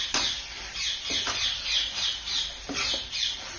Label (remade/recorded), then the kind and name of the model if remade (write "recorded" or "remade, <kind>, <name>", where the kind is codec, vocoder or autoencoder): recorded